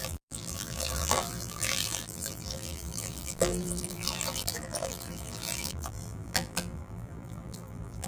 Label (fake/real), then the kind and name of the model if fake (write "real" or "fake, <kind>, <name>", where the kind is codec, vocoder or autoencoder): fake, vocoder, BigVGAN v2